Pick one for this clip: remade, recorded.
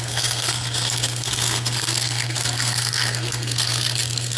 remade